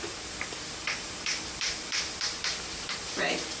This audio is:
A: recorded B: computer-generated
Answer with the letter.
B